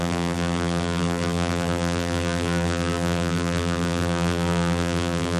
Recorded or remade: remade